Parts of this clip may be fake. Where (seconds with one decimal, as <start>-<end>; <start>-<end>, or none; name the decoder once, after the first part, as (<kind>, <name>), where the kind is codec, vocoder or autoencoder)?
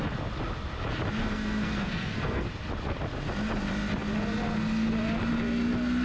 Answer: 1.2-2.5 (codec, SNAC)